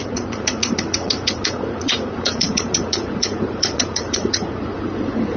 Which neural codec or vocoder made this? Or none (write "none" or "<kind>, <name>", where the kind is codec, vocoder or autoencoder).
vocoder, Vocos